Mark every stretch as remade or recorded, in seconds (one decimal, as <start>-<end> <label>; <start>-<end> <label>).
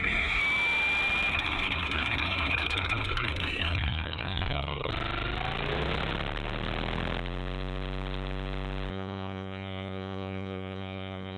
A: 0.0-0.4 remade; 0.4-1.3 recorded; 1.3-4.9 remade; 4.9-8.9 recorded; 8.9-11.4 remade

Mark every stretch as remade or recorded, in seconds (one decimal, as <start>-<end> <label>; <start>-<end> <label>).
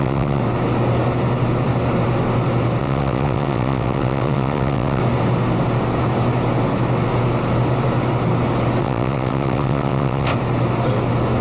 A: 0.0-0.4 remade; 0.4-2.8 recorded; 2.8-5.0 remade; 5.0-8.8 recorded; 8.8-10.3 remade; 10.3-11.4 recorded